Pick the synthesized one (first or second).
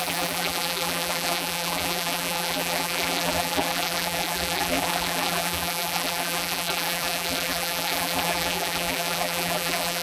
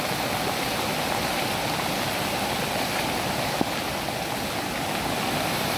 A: first